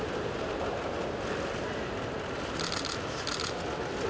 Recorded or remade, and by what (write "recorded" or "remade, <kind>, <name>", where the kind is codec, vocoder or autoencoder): recorded